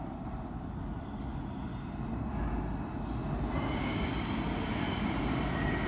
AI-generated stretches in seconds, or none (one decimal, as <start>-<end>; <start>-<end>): none